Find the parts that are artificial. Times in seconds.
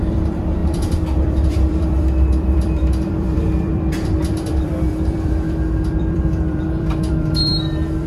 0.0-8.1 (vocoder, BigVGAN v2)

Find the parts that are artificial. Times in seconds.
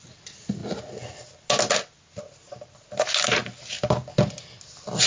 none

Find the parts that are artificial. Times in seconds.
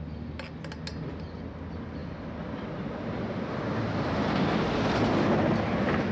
none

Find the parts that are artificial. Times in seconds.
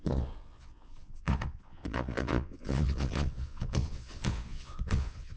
0.0-5.4 (vocoder, Vocos)